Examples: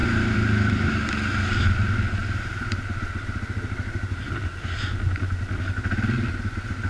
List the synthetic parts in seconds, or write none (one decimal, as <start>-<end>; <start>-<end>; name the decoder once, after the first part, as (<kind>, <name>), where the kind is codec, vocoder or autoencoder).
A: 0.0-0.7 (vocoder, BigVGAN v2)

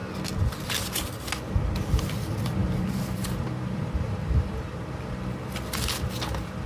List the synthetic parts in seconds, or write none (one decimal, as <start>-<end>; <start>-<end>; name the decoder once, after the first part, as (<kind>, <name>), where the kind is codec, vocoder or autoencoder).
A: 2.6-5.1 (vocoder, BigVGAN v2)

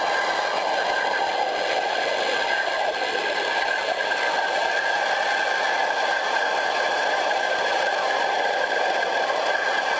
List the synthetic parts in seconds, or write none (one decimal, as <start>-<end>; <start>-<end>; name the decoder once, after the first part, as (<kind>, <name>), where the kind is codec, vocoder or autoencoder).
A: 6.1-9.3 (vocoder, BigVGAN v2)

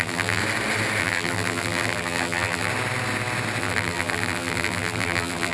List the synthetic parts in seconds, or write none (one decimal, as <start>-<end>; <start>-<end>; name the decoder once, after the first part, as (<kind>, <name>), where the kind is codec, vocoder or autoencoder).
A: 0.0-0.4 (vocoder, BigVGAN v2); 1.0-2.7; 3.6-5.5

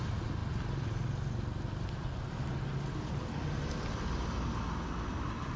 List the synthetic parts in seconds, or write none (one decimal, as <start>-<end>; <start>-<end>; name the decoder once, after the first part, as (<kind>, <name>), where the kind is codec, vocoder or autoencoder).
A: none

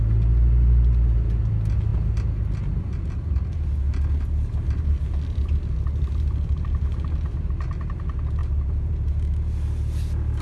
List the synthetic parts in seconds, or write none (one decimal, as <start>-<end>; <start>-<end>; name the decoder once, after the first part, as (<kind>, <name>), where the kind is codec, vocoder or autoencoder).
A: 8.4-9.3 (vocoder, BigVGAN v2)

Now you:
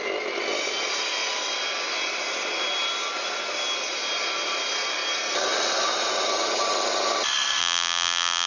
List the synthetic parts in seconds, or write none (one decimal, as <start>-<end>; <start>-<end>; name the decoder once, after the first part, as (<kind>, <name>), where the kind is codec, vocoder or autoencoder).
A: 7.6-8.5 (vocoder, BigVGAN v2)